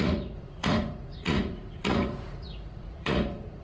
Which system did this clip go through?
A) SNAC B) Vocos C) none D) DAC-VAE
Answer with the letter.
B